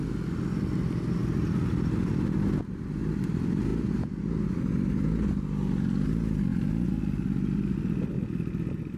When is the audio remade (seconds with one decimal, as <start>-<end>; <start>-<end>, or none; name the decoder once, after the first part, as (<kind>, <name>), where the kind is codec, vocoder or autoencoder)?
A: none